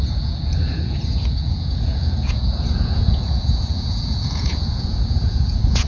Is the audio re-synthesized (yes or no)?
yes